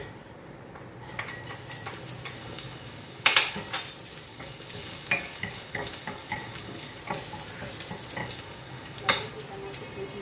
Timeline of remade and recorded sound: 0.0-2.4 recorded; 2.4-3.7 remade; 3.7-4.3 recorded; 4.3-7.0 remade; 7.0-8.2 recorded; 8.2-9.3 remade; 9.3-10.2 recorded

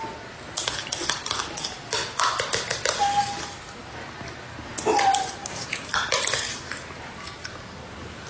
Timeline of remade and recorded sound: 0.0-5.4 recorded; 5.4-5.9 remade; 5.9-8.3 recorded

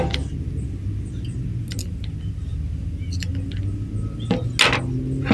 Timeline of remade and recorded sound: 0.0-5.3 recorded

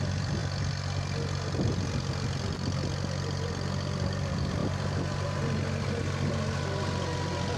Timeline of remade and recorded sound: 0.0-7.6 recorded

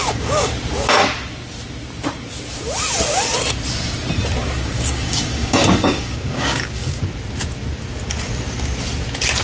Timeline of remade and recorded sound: 0.0-0.5 remade; 0.5-4.4 recorded; 4.4-7.0 remade; 7.0-9.4 recorded

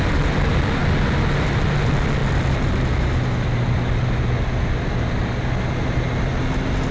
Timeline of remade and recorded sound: 0.0-6.9 recorded